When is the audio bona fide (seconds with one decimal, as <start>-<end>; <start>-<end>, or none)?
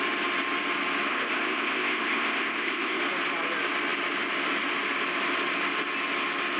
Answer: 0.0-1.1; 3.0-6.6